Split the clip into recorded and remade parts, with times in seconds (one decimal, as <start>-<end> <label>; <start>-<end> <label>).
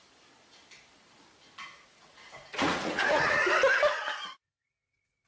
0.0-1.7 recorded; 1.7-3.5 remade; 3.5-5.3 recorded